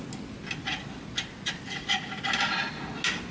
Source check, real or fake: real